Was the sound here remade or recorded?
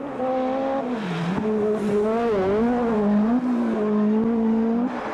recorded